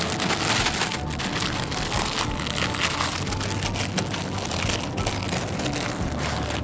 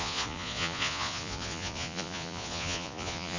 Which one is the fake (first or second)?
second